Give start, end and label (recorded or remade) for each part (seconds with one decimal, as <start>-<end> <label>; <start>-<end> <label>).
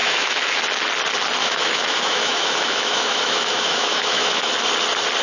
0.0-0.6 remade; 0.6-1.4 recorded; 1.4-4.5 remade; 4.5-5.2 recorded